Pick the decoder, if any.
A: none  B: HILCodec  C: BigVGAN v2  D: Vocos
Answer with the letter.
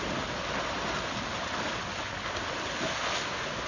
A